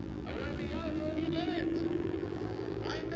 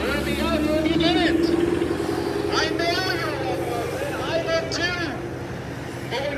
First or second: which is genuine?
second